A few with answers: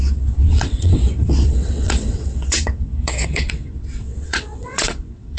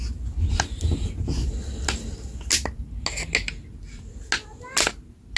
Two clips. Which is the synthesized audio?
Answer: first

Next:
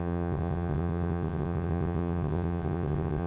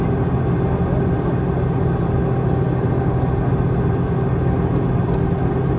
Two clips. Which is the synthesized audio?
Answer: first